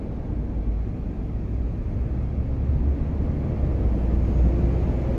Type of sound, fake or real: real